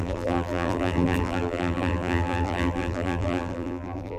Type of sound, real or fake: fake